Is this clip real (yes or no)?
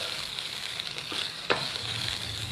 no